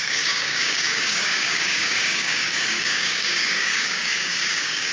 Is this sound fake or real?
fake